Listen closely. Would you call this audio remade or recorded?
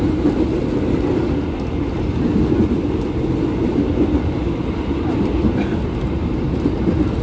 recorded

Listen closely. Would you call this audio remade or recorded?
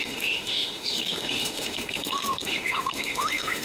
remade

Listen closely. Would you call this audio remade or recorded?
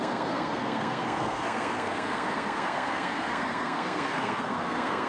remade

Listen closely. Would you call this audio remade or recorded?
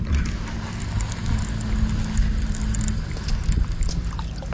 recorded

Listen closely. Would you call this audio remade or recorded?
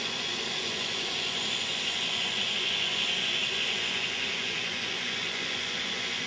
remade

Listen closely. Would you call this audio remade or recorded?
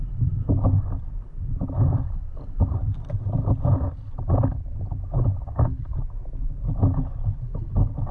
recorded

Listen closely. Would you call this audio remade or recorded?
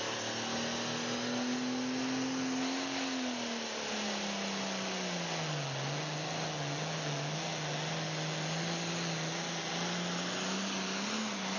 recorded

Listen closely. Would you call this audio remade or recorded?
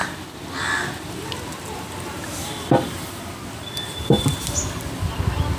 recorded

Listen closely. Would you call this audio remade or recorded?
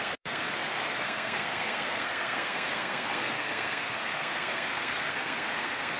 remade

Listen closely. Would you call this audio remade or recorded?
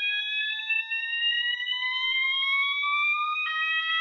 recorded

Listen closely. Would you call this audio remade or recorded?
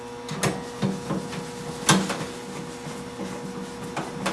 recorded